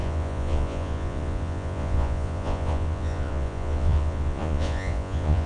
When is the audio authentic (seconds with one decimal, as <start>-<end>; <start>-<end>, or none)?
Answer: none